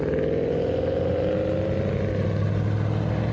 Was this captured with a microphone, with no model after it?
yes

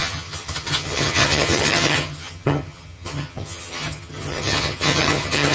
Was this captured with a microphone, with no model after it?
no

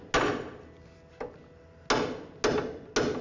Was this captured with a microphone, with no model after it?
yes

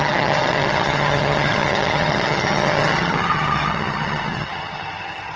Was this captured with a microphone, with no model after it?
no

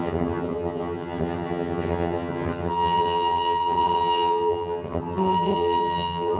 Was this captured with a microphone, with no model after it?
no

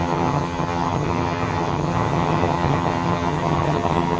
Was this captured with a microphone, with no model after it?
no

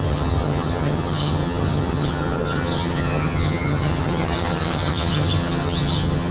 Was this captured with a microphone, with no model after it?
no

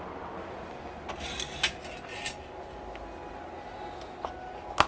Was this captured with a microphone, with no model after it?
yes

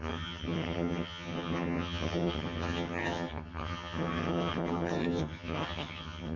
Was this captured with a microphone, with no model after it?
no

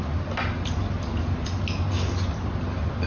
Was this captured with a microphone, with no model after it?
yes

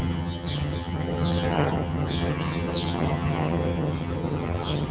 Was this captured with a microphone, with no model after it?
no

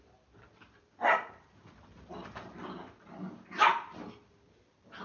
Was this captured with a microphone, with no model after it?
yes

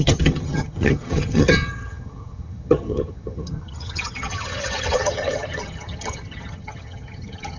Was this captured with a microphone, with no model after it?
no